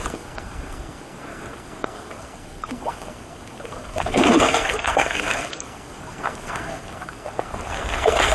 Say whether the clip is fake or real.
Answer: fake